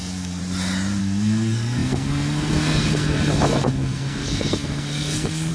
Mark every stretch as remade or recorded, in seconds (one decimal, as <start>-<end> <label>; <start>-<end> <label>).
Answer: 0.0-0.4 remade; 0.4-1.0 recorded; 1.0-5.5 remade